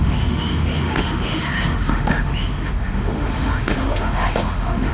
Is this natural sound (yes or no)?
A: no